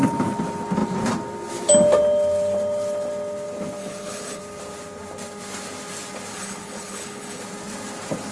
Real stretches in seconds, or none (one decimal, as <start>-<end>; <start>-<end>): 0.0-3.8; 4.4-6.3; 7.4-8.3

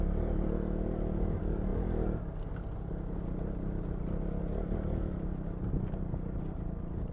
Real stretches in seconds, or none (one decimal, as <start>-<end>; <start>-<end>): 0.0-7.1

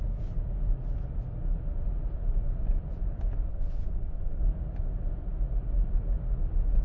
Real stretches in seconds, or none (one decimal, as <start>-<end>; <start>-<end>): 0.0-3.5; 4.4-6.8

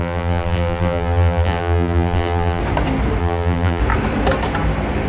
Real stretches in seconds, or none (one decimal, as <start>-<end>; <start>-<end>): 2.6-3.2; 3.8-5.1